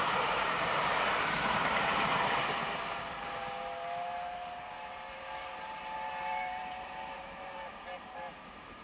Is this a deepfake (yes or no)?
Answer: no